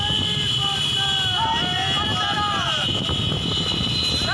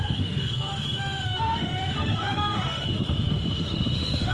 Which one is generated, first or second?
second